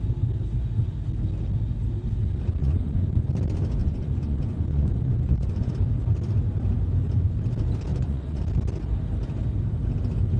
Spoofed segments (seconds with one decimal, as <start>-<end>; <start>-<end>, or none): 2.6-3.3; 3.8-5.7; 7.9-8.4